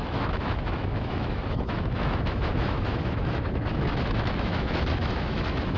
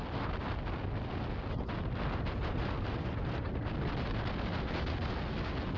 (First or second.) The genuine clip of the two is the second